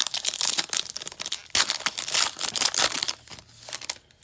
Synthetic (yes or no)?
no